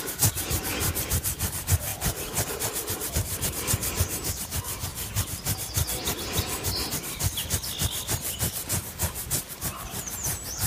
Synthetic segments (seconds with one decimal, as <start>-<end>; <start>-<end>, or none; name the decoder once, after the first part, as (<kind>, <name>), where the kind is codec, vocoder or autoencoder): 0.0-1.9 (vocoder, BigVGAN v2); 3.1-4.9; 6.9-7.4; 8.6-10.7

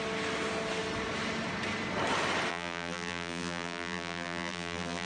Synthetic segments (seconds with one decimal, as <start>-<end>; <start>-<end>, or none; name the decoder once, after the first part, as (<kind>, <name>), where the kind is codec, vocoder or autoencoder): 2.5-5.1 (vocoder, BigVGAN v2)

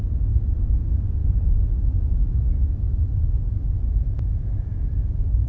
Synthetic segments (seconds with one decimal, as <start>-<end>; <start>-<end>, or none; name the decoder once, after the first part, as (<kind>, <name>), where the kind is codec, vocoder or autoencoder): 1.2-1.8 (vocoder, BigVGAN v2)

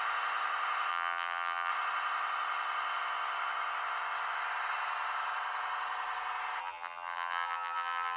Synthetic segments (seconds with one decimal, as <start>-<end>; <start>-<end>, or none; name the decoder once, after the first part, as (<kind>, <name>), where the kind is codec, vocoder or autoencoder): 0.9-1.7 (vocoder, BigVGAN v2); 6.6-8.2

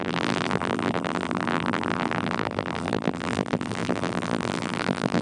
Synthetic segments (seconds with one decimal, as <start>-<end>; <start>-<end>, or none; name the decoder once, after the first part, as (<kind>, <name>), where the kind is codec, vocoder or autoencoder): 0.0-5.2 (vocoder, BigVGAN v2)

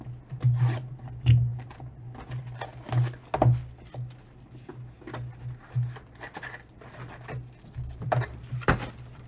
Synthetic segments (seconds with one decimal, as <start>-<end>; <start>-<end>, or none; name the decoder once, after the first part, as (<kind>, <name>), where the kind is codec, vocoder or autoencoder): none

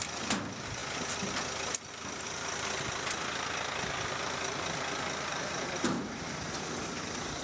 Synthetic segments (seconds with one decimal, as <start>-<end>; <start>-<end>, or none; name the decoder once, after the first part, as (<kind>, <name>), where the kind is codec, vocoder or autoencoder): 5.3-7.4 (vocoder, BigVGAN v2)